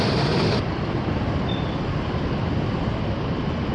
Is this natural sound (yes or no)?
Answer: yes